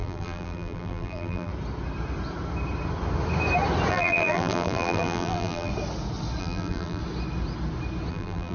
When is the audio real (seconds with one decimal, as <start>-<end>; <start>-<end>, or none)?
1.5-3.9; 5.7-6.4; 7.0-8.1